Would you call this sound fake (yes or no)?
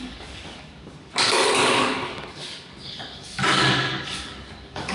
yes